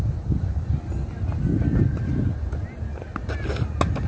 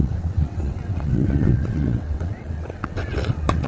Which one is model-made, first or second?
second